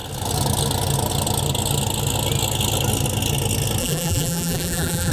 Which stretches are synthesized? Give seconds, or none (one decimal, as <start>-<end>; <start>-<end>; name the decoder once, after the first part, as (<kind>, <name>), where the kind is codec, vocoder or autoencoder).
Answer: 3.8-5.1 (vocoder, BigVGAN v2)